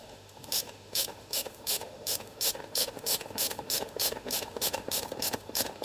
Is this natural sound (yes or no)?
no